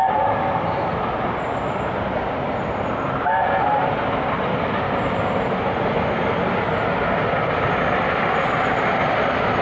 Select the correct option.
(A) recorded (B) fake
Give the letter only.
A